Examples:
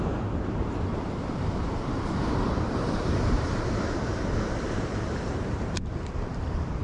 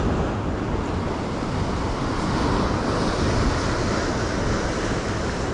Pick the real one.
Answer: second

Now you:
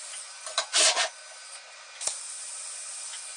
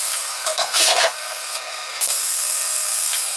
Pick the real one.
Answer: first